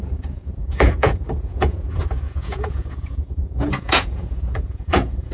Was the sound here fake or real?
fake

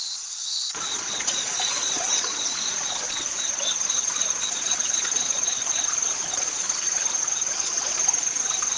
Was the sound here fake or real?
fake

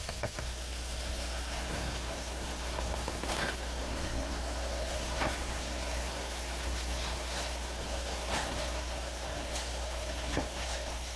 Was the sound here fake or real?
fake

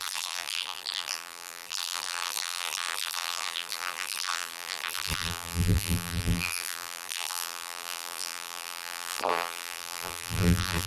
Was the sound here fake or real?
fake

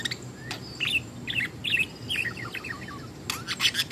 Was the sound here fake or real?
real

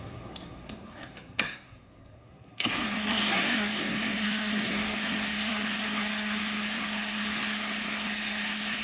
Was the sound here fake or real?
fake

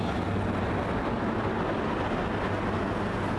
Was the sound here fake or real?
real